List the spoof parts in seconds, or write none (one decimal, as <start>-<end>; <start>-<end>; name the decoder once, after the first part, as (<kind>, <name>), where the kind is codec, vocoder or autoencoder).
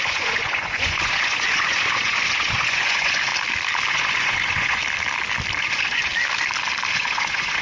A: 0.0-3.3 (vocoder, Vocos); 3.9-4.8; 5.6-6.1; 6.9-7.6